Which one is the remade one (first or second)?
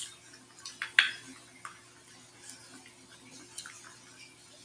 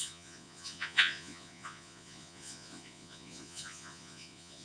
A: second